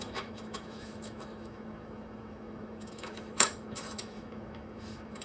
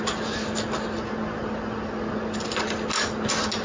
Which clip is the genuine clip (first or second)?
second